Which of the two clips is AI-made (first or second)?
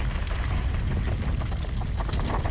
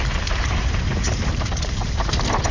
second